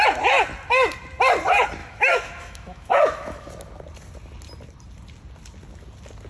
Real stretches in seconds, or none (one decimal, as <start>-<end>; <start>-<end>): 0.0-1.8; 3.5-6.3